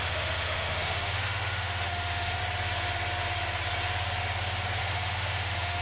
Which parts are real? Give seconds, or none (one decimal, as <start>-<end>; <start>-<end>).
2.4-4.8